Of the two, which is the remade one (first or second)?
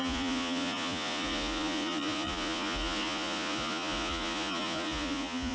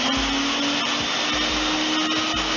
first